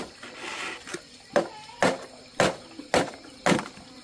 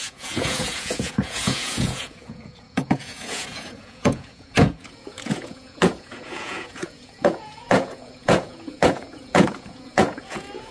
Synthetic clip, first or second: second